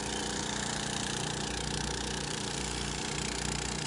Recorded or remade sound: remade